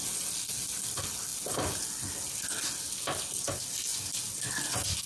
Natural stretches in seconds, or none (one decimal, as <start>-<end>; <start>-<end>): 0.0-5.1